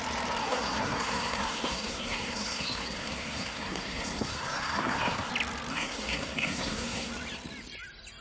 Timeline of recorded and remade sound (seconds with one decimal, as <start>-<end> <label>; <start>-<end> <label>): 0.0-0.4 recorded; 0.4-5.3 remade; 5.3-5.7 recorded; 5.7-7.1 remade; 7.1-8.2 recorded